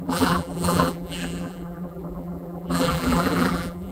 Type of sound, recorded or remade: remade